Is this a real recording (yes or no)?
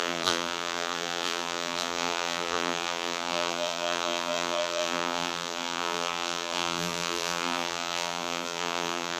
no